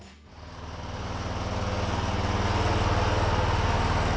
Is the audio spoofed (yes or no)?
no